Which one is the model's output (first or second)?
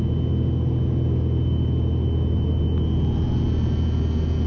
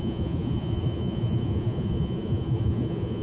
second